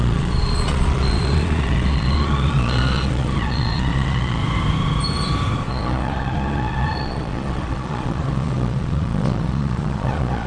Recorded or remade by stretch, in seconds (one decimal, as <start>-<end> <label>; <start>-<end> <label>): 0.0-4.4 remade; 4.4-5.7 recorded; 5.7-10.5 remade